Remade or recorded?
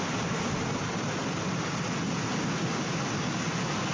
recorded